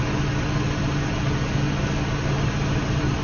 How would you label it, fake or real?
real